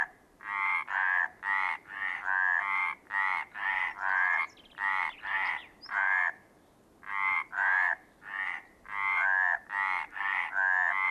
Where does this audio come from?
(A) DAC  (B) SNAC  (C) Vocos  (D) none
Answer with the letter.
D